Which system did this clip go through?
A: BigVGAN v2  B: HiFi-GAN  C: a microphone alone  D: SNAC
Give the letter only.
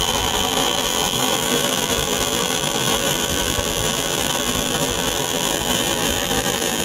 A